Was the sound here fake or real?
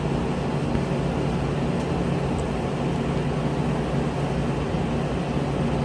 real